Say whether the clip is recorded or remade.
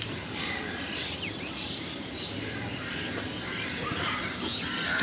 remade